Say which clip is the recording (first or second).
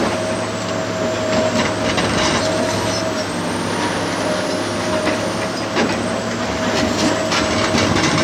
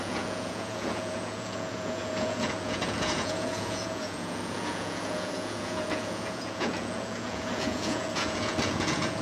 first